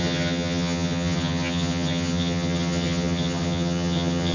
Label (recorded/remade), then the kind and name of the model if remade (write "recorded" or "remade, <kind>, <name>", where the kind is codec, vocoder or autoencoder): remade, vocoder, HiFi-GAN